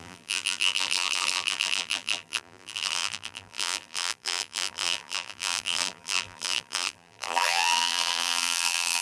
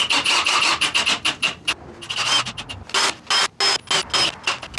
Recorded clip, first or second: second